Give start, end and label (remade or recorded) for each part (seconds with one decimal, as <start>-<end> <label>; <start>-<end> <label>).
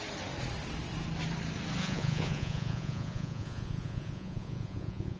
0.0-1.8 recorded; 1.8-5.2 remade